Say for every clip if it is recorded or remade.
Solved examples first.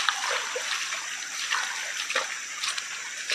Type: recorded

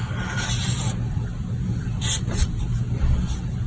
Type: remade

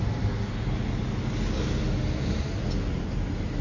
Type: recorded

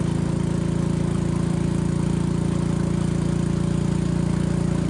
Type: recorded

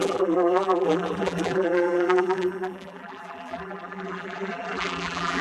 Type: remade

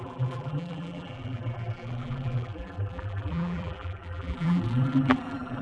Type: remade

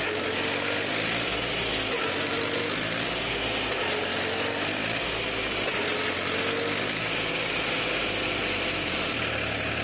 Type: recorded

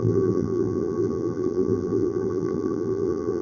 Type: remade